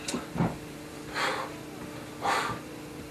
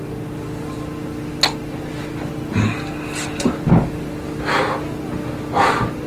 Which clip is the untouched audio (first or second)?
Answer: second